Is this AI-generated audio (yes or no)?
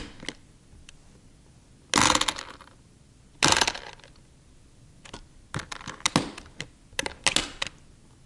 no